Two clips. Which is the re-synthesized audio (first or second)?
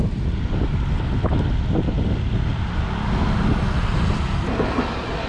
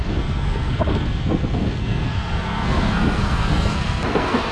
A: second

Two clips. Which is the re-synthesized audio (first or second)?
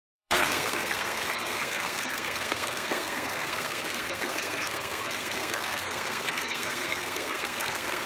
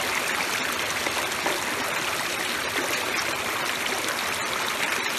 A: first